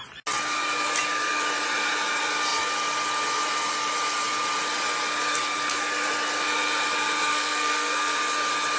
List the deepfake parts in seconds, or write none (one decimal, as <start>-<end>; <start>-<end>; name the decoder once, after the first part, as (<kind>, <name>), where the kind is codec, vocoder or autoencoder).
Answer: 7.3-8.2 (codec, SNAC)